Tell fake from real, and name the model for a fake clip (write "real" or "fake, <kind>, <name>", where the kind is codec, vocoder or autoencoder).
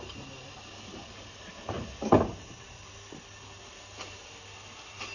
real